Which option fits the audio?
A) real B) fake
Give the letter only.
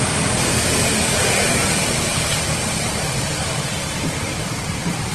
B